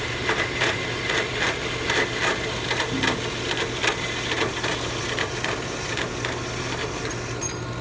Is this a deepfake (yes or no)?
no